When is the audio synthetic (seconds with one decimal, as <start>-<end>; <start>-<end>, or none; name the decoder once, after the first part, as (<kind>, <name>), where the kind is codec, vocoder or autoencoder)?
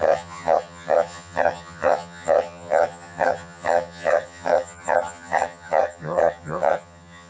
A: 0.0-7.3 (vocoder, HiFi-GAN)